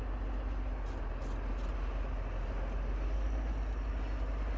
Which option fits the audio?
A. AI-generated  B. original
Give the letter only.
B